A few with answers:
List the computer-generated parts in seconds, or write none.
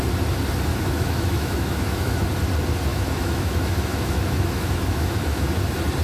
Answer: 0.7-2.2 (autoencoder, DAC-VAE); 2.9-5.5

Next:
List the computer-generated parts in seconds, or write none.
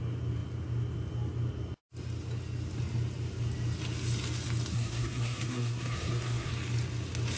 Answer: 4.7-6.5 (codec, SNAC)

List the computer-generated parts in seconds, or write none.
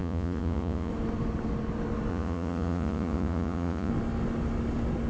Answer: 0.0-0.9 (vocoder, Vocos); 2.1-3.9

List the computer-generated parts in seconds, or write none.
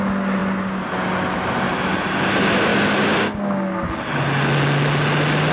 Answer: none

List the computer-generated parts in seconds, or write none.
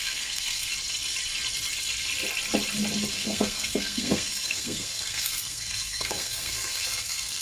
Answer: 0.0-0.7 (codec, SNAC); 3.1-7.4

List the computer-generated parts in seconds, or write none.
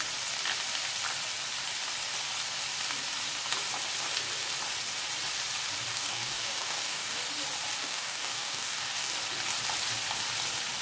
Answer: 5.9-7.2 (codec, DAC); 7.8-9.1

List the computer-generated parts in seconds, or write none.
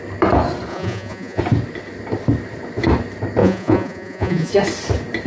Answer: 0.7-1.4 (vocoder, Vocos); 3.4-4.5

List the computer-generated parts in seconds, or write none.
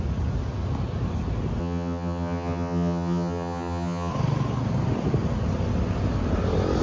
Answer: 1.6-4.1 (vocoder, HiFi-GAN)